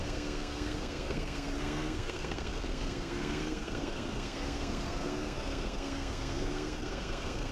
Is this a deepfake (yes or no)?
yes